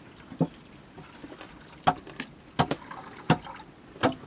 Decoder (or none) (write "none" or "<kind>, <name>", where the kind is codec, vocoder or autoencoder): none